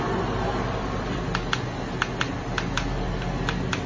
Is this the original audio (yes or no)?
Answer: yes